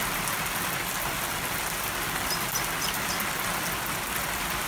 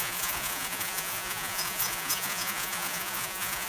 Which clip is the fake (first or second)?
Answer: second